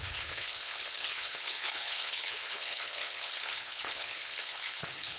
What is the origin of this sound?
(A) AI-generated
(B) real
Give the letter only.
A